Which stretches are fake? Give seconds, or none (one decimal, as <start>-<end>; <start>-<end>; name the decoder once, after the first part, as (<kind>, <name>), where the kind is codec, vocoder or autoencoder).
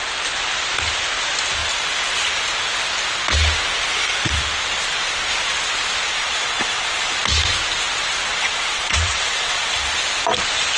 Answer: 6.1-7.1 (vocoder, WaveNeXt); 8.3-9.9